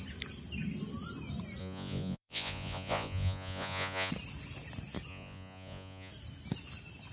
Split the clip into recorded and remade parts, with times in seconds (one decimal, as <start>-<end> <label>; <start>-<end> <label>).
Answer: 0.0-1.6 recorded; 1.6-4.1 remade; 4.1-5.1 recorded; 5.1-6.1 remade; 6.1-7.1 recorded